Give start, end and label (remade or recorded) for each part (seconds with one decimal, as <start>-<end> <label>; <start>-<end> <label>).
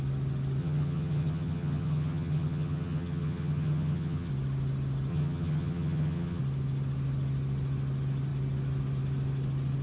0.0-0.6 recorded; 0.6-4.3 remade; 4.3-5.1 recorded; 5.1-6.4 remade; 6.4-9.8 recorded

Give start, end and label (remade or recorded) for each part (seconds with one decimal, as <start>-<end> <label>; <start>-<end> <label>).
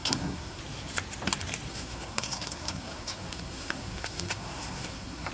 0.0-0.6 remade; 0.6-1.7 recorded; 1.7-5.3 remade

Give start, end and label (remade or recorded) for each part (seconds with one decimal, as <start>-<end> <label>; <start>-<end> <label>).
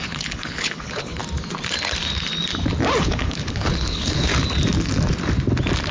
0.0-1.2 remade; 1.2-3.0 recorded; 3.0-4.3 remade; 4.3-5.9 recorded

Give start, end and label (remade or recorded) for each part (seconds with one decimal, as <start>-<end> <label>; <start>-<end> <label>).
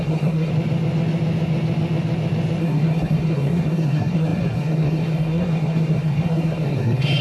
0.0-0.5 remade; 0.5-2.6 recorded; 2.6-7.2 remade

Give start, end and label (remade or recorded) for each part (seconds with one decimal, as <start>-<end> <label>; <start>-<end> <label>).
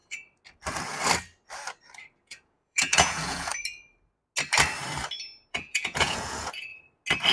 0.0-2.2 recorded; 2.2-3.5 remade; 3.5-5.5 recorded; 5.5-6.7 remade; 6.7-7.3 recorded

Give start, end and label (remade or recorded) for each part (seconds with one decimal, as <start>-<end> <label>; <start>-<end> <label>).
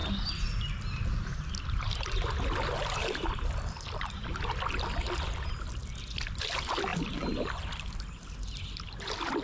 0.0-9.4 recorded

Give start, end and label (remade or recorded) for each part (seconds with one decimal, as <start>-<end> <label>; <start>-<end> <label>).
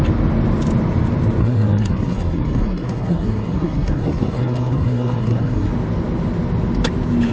0.0-1.4 recorded; 1.4-5.7 remade; 5.7-7.3 recorded